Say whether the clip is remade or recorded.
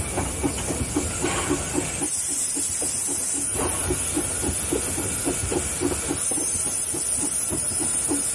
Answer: recorded